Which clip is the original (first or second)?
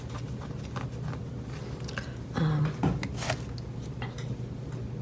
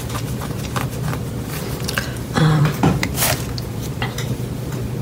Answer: first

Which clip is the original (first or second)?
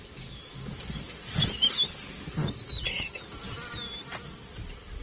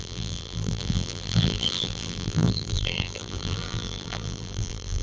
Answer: first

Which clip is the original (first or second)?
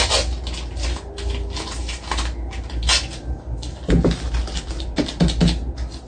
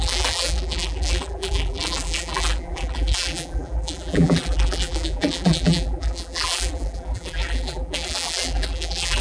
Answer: first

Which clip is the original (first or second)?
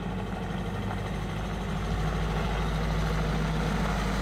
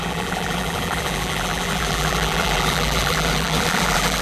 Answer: first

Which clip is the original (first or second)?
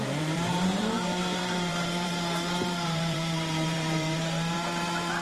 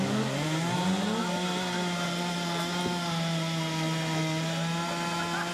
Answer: second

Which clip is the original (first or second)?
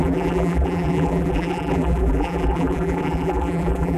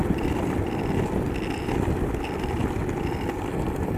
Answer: second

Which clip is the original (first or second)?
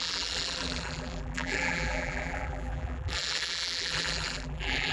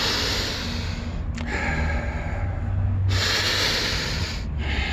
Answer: second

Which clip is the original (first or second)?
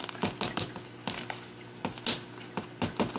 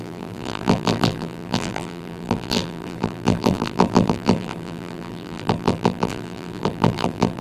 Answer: first